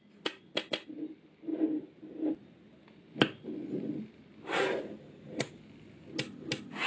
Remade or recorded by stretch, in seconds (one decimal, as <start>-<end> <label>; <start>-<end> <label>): 0.0-6.9 recorded